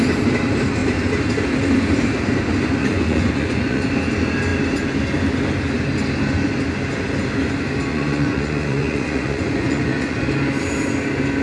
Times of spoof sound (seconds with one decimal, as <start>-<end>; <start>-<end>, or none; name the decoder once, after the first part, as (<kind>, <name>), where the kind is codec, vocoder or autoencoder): 2.8-3.9 (vocoder, Vocos); 7.9-10.2